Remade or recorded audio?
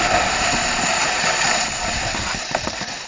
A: recorded